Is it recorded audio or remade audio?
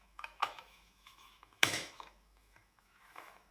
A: remade